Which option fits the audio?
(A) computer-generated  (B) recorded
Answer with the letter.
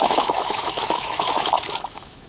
A